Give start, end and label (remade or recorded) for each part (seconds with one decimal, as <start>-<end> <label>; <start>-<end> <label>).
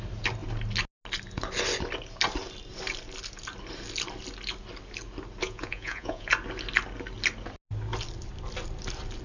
0.0-5.4 recorded; 5.4-6.3 remade; 6.3-9.2 recorded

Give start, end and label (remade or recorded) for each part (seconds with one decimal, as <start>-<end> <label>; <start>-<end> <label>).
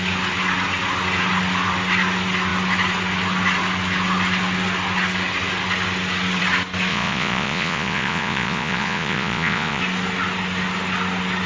0.0-6.9 recorded; 6.9-9.8 remade; 9.8-11.5 recorded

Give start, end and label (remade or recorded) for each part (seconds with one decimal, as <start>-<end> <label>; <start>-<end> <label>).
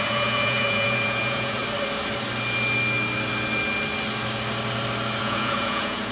0.0-1.6 remade; 1.6-5.2 recorded; 5.2-6.1 remade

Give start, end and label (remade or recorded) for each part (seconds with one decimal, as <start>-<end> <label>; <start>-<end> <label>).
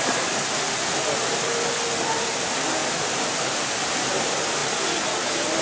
0.0-5.6 recorded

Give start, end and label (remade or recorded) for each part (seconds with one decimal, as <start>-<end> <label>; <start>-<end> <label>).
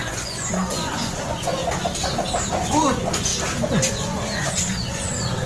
0.0-1.6 remade; 1.6-2.5 recorded; 2.5-3.3 remade; 3.3-3.9 recorded; 3.9-5.5 remade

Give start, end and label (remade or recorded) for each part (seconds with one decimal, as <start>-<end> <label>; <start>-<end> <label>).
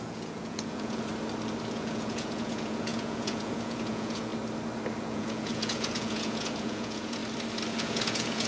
0.0-1.1 remade; 1.1-1.7 recorded; 1.7-4.3 remade; 4.3-5.0 recorded; 5.0-7.2 remade; 7.2-7.8 recorded; 7.8-8.5 remade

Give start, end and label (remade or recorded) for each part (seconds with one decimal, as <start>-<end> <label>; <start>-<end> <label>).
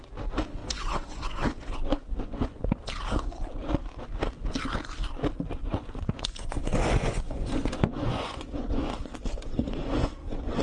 0.0-0.6 recorded; 0.6-2.6 remade; 2.6-5.6 recorded; 5.6-8.9 remade; 8.9-9.8 recorded; 9.8-10.6 remade